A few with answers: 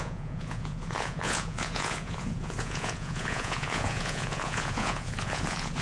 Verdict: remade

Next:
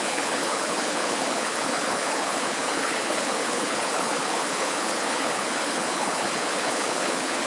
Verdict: remade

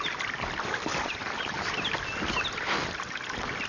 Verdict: recorded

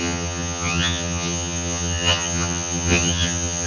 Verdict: remade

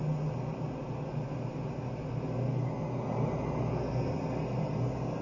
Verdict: recorded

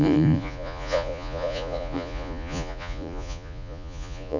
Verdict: remade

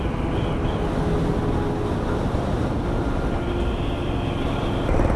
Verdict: recorded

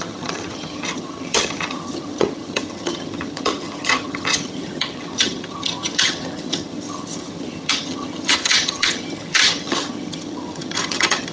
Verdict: remade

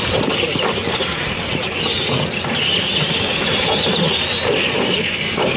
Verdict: recorded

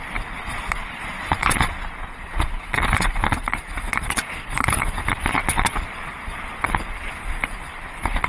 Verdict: remade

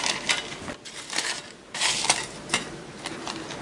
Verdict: recorded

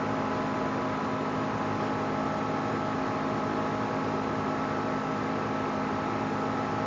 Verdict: recorded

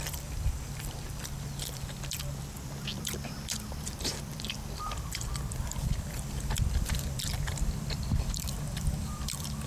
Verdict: remade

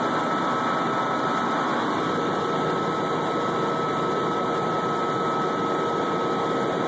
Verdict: recorded